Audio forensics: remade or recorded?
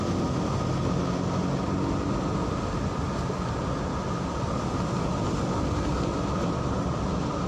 recorded